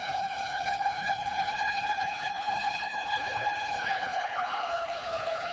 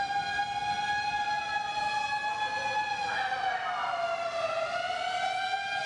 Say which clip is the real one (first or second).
second